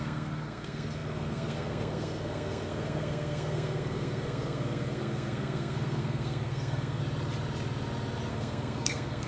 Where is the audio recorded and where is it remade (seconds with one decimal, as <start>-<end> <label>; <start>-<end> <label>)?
0.0-7.0 remade; 7.0-8.3 recorded; 8.3-9.3 remade

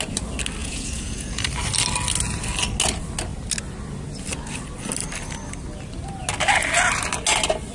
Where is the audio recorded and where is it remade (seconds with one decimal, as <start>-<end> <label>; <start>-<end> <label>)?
0.0-0.6 recorded; 0.6-1.4 remade; 1.4-7.7 recorded

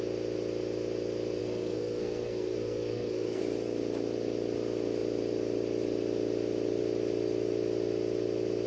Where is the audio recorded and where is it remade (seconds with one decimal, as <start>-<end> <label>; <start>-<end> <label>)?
0.0-1.4 recorded; 1.4-3.4 remade; 3.4-8.7 recorded

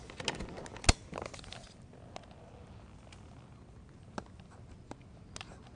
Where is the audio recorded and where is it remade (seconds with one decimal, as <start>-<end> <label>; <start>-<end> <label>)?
0.0-5.8 recorded

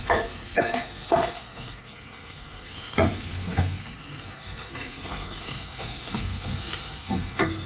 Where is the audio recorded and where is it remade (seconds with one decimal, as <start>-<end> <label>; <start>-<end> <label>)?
0.0-7.7 remade

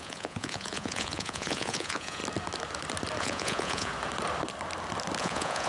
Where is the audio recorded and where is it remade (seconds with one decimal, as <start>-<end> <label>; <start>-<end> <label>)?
0.0-2.2 remade; 2.2-3.2 recorded; 3.2-3.9 remade; 3.9-5.2 recorded; 5.2-5.7 remade

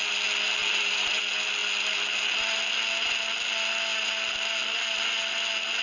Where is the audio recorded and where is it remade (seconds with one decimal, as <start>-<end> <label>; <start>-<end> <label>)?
0.0-0.6 recorded; 0.6-1.2 remade; 1.2-5.8 recorded